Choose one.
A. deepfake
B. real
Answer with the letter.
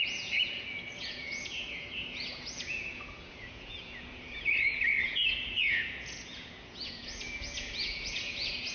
A